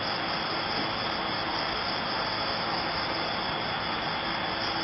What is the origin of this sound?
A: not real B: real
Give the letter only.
B